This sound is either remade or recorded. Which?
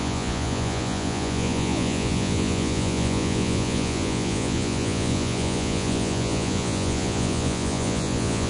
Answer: remade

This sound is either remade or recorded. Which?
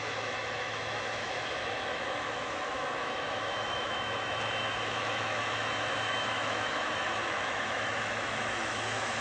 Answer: remade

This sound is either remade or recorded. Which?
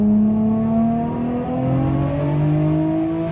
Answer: recorded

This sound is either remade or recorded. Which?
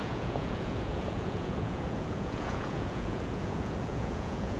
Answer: remade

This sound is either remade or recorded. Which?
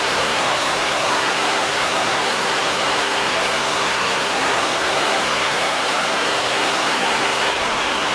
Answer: remade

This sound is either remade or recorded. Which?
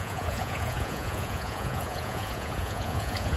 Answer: remade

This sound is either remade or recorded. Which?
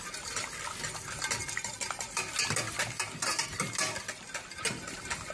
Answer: recorded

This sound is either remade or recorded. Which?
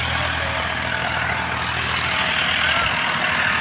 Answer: recorded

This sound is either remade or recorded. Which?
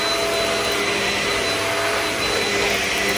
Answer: recorded